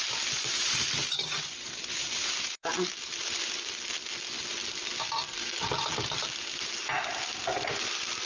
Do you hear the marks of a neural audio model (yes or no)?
yes